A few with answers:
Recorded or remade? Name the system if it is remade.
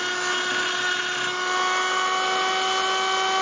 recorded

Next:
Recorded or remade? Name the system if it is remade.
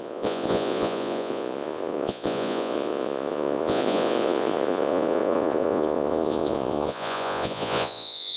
remade, vocoder, Vocos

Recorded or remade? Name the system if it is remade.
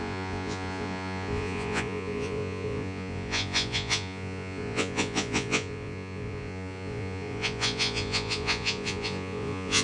remade, vocoder, Vocos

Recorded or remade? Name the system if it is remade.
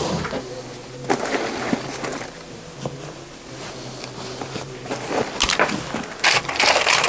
recorded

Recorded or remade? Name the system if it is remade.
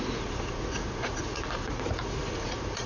remade, vocoder, Vocos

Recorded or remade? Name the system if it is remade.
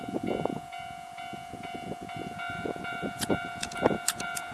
remade, vocoder, Vocos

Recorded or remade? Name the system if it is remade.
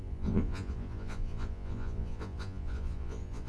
remade, vocoder, Vocos